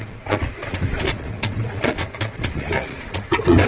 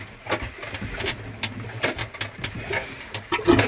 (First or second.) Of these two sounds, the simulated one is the first